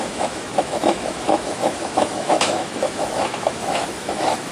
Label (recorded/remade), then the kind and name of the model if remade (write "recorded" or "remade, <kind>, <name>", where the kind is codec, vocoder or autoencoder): remade, autoencoder, DAC-VAE